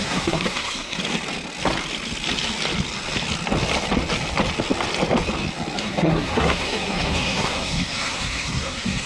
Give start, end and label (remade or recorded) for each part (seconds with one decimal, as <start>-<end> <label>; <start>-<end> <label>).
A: 0.0-1.0 remade; 1.0-5.8 recorded; 5.8-9.1 remade